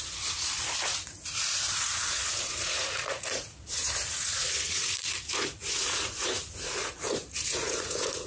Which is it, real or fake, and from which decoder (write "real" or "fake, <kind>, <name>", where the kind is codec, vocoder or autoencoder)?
fake, vocoder, Vocos